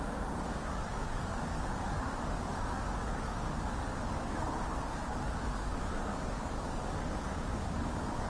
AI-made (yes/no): yes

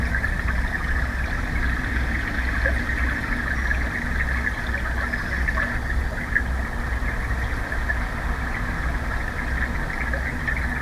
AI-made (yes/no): no